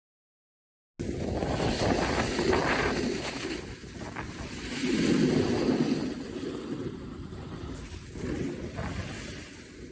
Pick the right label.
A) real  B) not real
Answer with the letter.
A